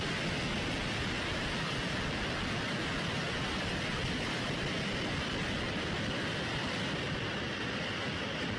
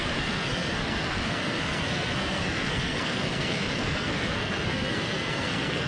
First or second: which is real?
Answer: first